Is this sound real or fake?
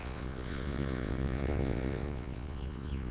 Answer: fake